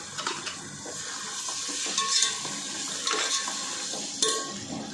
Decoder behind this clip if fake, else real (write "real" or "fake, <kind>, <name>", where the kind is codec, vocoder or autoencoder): real